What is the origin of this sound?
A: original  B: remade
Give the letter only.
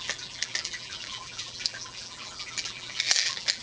B